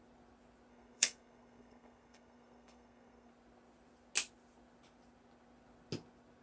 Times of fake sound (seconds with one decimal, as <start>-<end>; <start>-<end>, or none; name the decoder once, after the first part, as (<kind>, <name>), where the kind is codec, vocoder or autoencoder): 0.7-3.3 (codec, SNAC)